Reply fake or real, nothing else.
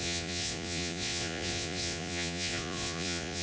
fake